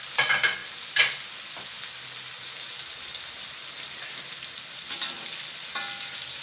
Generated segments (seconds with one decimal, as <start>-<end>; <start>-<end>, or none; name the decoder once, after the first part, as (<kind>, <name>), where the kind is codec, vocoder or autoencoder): none